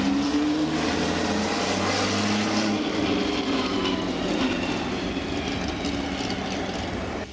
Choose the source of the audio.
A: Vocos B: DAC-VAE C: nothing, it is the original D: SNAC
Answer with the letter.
C